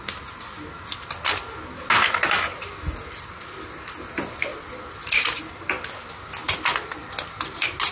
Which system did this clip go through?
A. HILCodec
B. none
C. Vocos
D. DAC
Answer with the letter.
B